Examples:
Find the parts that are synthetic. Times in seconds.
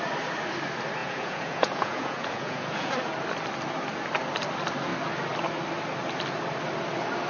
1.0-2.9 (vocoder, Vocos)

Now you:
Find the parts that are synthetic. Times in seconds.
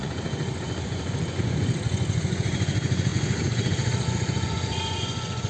0.0-5.5 (vocoder, Vocos)